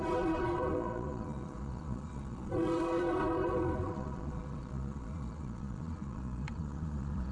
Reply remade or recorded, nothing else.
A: remade